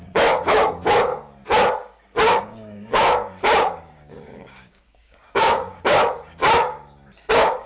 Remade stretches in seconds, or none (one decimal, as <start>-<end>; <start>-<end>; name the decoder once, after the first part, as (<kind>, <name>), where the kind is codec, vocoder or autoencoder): 0.0-1.1 (codec, DAC); 2.4-6.0; 7.3-7.7